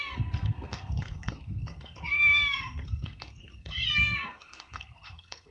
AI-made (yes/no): yes